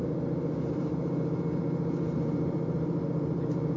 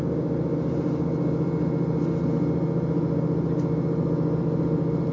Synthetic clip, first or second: first